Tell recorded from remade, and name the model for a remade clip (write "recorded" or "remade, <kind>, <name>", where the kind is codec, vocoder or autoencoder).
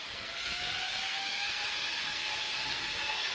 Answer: remade, codec, SNAC